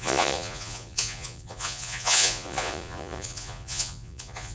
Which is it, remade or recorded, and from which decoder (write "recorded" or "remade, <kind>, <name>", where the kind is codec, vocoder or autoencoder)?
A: remade, vocoder, Vocos